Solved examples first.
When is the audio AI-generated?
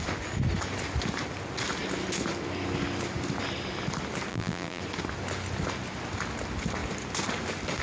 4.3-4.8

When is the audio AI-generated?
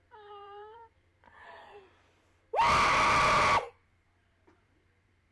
0.0-1.1; 4.3-5.3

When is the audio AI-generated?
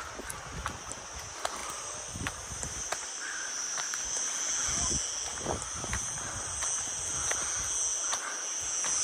1.6-4.4; 5.3-6.1